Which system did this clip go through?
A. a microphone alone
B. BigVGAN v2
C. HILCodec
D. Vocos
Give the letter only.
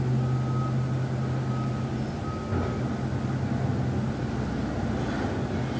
A